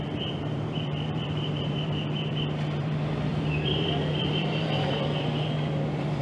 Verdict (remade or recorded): remade